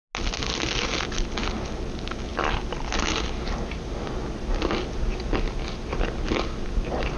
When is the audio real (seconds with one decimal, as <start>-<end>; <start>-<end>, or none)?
0.0-7.2